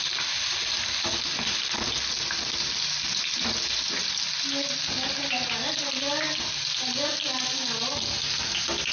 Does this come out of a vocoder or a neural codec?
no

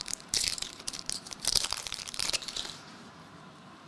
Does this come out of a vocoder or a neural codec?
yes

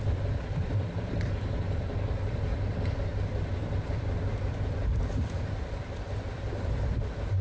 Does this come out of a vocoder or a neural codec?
yes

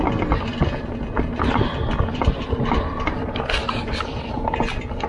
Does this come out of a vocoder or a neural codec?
no